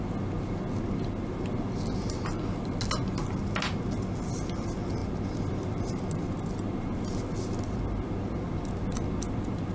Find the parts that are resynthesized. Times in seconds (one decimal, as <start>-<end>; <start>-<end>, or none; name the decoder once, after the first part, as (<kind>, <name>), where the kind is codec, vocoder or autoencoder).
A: none